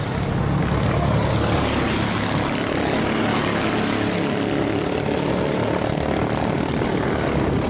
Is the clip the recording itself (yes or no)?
yes